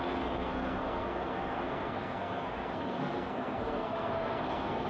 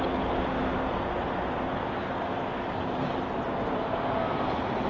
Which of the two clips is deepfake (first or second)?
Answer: first